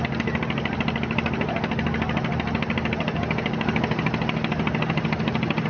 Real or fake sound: real